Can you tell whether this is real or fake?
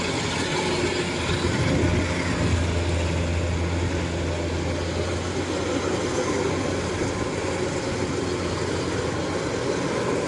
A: real